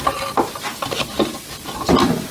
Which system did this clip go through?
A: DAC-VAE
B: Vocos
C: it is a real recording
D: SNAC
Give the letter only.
C